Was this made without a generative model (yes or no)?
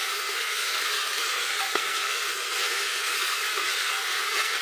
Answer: no